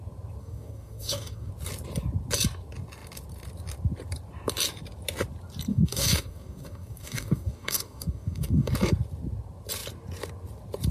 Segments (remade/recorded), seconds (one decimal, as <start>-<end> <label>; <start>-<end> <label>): 0.0-0.4 recorded; 0.4-1.5 remade; 1.5-5.7 recorded; 5.7-8.7 remade; 8.7-10.9 recorded